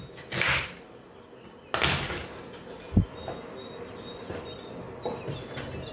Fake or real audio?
real